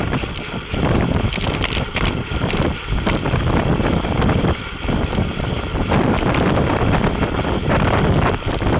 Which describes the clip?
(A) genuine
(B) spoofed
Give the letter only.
B